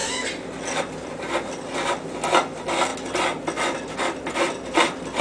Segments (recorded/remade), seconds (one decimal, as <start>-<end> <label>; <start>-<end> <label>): 0.0-5.2 recorded